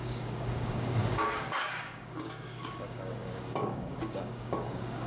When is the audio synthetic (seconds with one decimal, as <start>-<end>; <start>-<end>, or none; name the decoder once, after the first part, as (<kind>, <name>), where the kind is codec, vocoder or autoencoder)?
0.0-5.1 (codec, DAC)